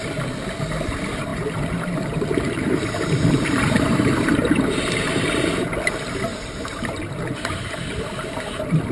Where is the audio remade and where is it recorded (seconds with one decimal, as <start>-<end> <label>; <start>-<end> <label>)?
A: 0.0-1.3 recorded; 1.3-5.5 remade; 5.5-6.3 recorded; 6.3-7.5 remade; 7.5-8.9 recorded